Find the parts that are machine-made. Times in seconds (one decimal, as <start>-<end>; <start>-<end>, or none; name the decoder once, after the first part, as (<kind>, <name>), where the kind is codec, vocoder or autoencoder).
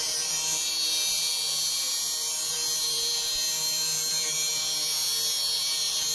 0.0-6.1 (vocoder, BigVGAN v2)